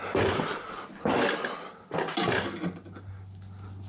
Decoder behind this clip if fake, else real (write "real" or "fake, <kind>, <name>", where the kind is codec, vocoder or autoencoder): real